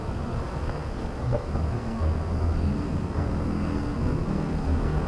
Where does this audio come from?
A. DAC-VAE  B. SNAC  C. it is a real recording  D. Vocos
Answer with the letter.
B